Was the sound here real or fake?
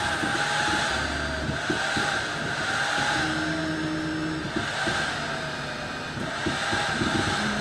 real